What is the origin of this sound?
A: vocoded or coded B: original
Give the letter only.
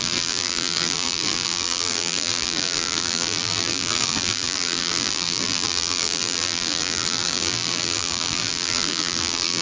A